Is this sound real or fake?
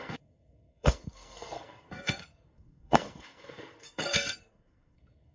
fake